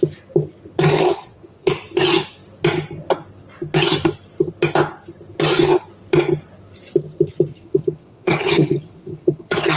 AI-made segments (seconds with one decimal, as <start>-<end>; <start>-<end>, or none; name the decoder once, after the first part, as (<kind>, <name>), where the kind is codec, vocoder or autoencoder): 0.9-1.7 (vocoder, HiFi-GAN); 7.5-9.8